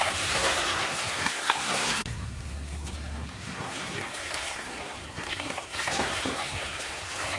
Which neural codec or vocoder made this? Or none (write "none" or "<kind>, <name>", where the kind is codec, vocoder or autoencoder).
codec, SNAC